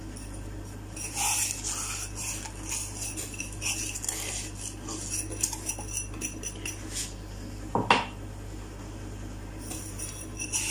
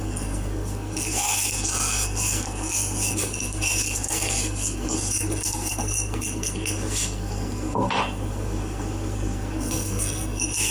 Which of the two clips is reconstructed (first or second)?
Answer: second